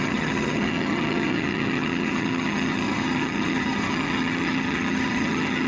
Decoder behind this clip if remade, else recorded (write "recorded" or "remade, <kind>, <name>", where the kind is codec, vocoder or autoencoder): remade, vocoder, HiFi-GAN